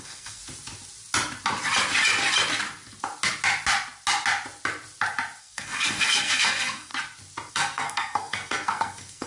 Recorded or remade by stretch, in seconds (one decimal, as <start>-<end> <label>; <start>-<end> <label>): 0.0-0.4 remade; 0.4-5.4 recorded; 5.4-6.9 remade; 6.9-7.5 recorded; 7.5-9.3 remade